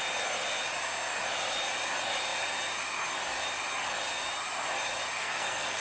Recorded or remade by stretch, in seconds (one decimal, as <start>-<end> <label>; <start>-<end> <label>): 0.0-5.2 recorded; 5.2-5.8 remade